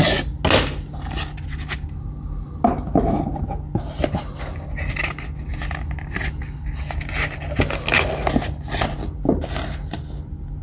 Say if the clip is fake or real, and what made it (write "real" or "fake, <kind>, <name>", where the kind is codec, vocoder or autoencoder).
real